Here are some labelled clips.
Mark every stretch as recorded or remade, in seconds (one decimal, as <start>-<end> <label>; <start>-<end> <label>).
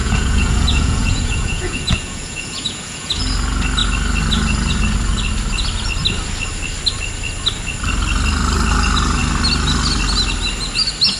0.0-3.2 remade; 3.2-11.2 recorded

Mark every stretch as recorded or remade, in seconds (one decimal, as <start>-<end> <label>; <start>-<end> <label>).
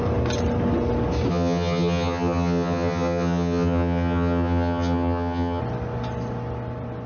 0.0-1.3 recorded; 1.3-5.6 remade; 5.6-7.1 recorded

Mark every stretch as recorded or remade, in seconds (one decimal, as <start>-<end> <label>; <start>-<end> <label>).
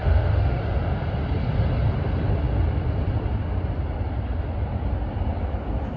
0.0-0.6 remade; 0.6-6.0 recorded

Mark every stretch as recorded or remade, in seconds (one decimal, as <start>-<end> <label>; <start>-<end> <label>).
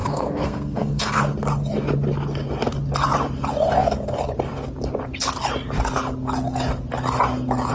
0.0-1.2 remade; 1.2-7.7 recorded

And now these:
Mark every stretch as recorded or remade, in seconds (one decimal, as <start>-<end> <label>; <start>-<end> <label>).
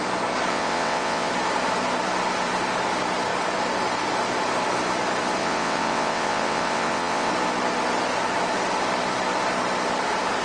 0.0-0.5 recorded; 0.5-1.3 remade; 1.3-5.4 recorded; 5.4-7.3 remade; 7.3-10.4 recorded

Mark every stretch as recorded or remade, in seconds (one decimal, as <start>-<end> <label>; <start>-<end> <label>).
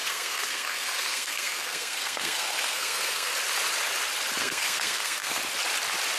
0.0-3.3 remade; 3.3-4.4 recorded; 4.4-5.4 remade; 5.4-6.2 recorded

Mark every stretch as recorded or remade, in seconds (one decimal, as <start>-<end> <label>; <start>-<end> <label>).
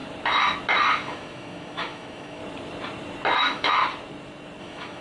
0.0-1.0 recorded; 1.0-2.4 remade; 2.4-3.4 recorded; 3.4-3.8 remade; 3.8-4.6 recorded; 4.6-5.0 remade